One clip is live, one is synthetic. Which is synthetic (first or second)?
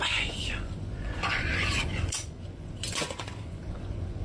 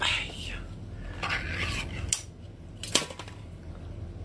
first